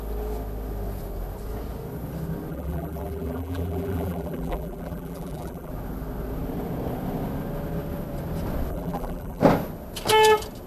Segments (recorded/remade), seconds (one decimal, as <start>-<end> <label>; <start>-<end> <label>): 0.0-2.5 recorded; 2.5-5.7 remade; 5.7-8.7 recorded; 8.7-9.4 remade; 9.4-10.7 recorded